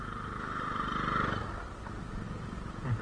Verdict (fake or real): real